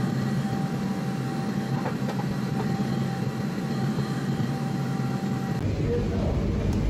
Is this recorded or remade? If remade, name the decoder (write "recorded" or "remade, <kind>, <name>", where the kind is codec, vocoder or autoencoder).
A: recorded